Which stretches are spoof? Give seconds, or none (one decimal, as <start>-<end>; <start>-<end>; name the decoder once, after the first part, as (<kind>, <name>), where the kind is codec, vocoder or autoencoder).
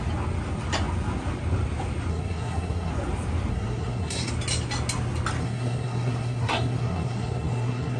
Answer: 2.1-2.9 (codec, SNAC); 3.5-4.3; 5.4-8.0